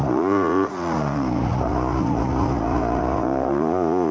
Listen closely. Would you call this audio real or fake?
fake